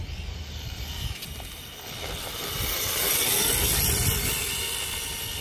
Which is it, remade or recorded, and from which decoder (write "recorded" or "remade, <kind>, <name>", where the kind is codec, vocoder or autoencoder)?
recorded